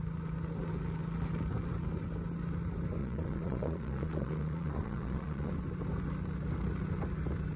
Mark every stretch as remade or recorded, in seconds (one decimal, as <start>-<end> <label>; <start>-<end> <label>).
0.0-3.0 recorded; 3.0-5.5 remade; 5.5-7.6 recorded

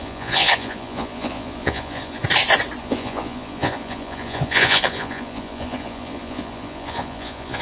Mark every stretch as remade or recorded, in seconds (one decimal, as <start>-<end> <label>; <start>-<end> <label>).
0.0-2.2 remade; 2.2-2.8 recorded; 2.8-7.6 remade